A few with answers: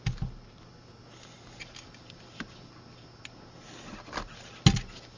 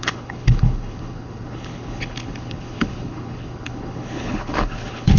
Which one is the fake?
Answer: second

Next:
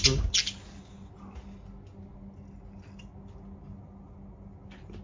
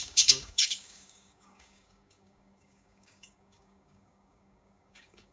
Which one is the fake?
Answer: second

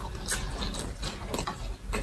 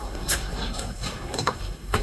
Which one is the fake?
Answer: second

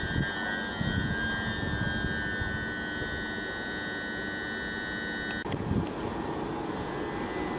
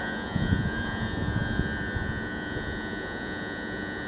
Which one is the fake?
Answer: second